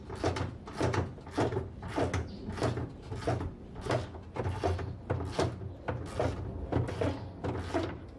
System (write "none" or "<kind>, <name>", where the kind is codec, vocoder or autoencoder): none